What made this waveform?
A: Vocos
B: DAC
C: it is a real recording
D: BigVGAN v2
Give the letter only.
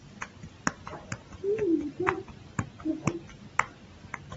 C